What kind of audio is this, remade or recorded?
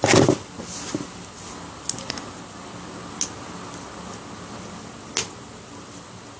recorded